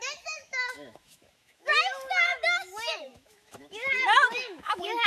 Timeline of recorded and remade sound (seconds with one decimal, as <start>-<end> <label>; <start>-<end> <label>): 0.0-5.1 remade